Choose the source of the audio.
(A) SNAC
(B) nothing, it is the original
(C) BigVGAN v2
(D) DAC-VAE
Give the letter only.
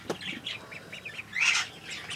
B